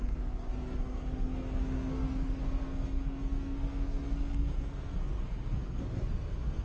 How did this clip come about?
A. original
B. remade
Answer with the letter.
B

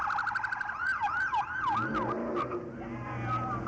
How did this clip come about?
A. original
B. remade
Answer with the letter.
A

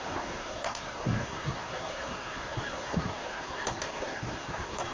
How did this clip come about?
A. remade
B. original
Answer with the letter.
A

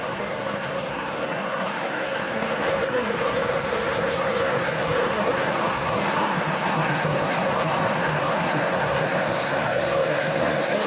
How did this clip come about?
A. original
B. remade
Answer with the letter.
B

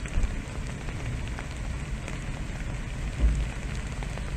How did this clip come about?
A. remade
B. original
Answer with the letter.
B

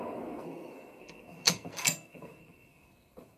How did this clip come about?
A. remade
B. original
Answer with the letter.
A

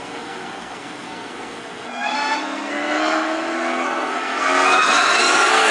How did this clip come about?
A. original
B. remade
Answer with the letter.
B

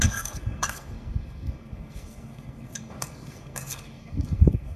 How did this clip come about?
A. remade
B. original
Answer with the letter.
A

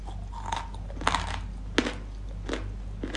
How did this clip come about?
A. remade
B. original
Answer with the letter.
B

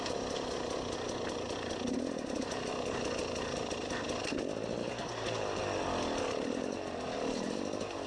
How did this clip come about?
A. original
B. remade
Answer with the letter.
A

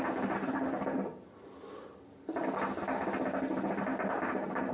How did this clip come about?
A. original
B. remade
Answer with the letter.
A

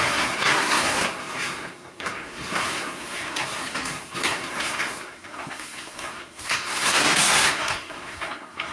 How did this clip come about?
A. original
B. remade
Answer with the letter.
B